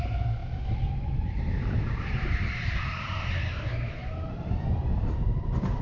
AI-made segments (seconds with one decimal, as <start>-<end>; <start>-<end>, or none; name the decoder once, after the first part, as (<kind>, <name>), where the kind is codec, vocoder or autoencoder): 0.4-3.3 (vocoder, BigVGAN v2); 4.0-5.8